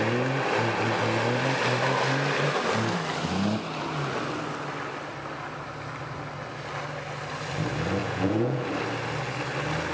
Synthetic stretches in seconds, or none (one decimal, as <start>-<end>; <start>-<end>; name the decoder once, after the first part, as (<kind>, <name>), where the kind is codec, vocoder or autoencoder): 8.0-8.7 (vocoder, Vocos)